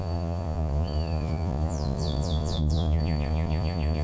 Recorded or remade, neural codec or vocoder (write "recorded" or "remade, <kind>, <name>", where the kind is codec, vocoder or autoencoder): remade, vocoder, Vocos